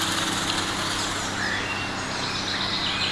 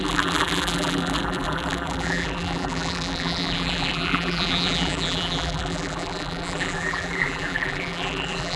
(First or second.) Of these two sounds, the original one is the first